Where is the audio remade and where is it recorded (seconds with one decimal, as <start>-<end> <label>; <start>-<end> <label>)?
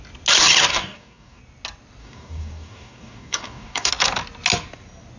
0.0-0.7 recorded; 0.7-1.4 remade; 1.4-2.0 recorded; 2.0-3.9 remade; 3.9-5.2 recorded